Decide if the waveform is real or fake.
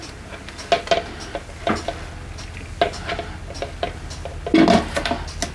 real